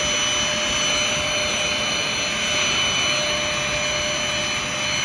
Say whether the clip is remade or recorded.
recorded